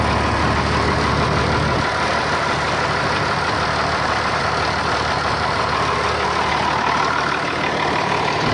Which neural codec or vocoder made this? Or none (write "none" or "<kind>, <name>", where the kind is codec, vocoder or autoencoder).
none